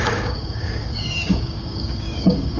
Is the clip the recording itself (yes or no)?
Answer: no